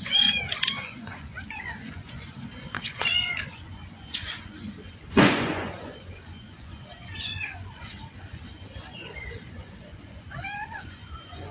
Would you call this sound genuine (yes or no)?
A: no